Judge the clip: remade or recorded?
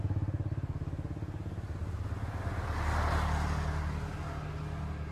recorded